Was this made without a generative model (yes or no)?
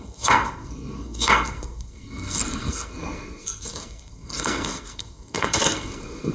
no